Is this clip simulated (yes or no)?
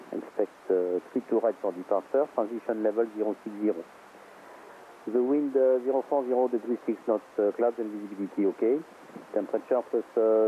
no